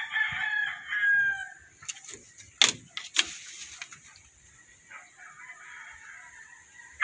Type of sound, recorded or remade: recorded